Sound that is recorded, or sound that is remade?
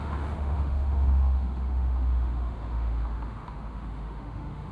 remade